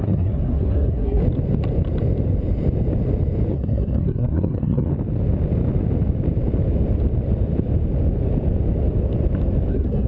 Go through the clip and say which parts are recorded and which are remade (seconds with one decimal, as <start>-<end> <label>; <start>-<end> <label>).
0.0-1.2 remade; 1.2-3.5 recorded; 3.5-4.9 remade; 4.9-9.7 recorded; 9.7-10.1 remade